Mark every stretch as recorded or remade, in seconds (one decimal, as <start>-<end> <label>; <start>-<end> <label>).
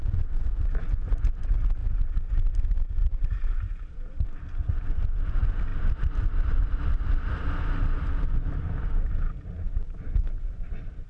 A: 0.0-3.0 recorded; 3.0-5.0 remade; 5.0-11.1 recorded